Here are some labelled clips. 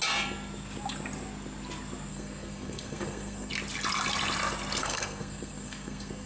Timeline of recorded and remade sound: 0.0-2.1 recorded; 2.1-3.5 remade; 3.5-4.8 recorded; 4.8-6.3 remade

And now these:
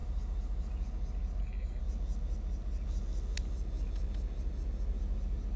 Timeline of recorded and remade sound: 0.0-1.4 recorded; 1.4-1.8 remade; 1.8-5.6 recorded